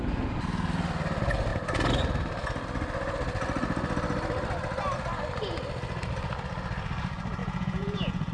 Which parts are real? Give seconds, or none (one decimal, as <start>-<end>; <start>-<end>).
0.0-7.4